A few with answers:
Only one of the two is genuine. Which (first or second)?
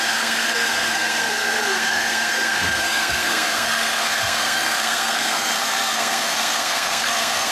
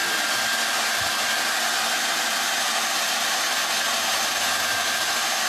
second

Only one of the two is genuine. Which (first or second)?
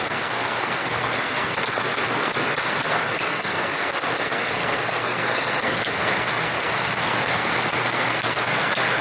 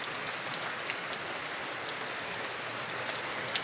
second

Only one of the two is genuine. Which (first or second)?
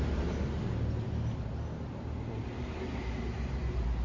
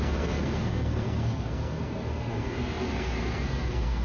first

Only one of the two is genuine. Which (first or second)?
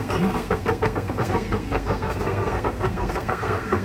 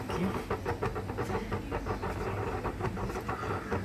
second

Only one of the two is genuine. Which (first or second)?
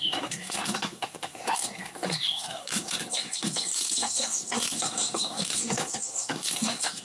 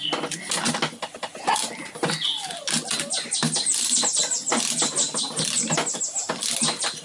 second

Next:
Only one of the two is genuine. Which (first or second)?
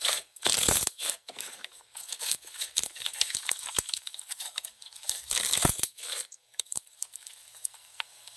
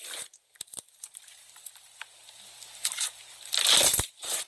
second